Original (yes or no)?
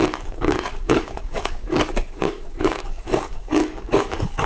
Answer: no